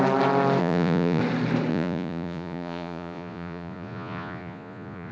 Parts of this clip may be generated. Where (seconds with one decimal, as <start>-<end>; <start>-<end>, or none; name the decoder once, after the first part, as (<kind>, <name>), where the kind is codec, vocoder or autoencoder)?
0.6-1.2 (vocoder, Vocos); 1.7-5.1